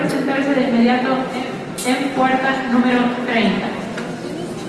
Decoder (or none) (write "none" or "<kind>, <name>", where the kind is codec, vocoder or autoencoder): none